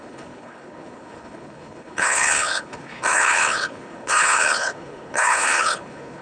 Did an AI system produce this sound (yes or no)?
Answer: yes